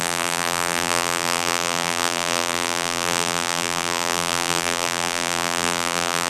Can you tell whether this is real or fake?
fake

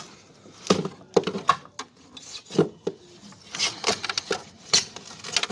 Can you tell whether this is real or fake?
real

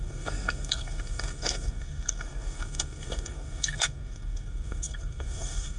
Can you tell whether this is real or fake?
fake